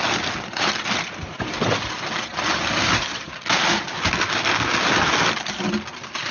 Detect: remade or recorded recorded